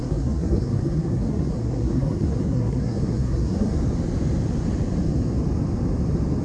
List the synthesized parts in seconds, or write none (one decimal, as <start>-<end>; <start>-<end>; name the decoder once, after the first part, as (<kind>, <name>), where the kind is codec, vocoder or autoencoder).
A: 0.0-3.8 (codec, SNAC)